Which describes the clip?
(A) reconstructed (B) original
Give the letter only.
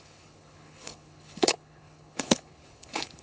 A